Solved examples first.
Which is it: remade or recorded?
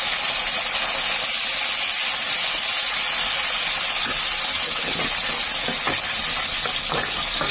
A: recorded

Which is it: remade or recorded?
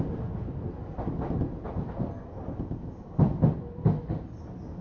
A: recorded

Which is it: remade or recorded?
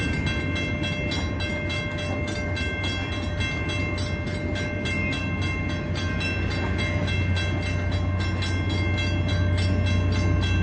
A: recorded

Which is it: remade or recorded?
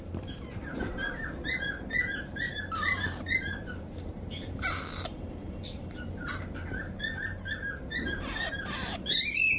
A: remade